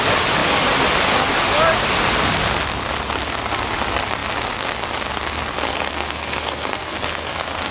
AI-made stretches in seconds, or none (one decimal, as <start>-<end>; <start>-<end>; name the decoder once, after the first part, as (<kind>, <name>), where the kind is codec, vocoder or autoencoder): 5.7-7.3 (codec, SNAC)